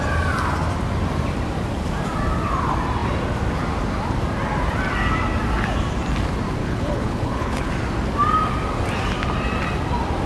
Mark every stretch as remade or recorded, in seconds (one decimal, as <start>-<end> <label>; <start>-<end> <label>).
0.0-6.6 recorded; 6.6-7.7 remade; 7.7-10.3 recorded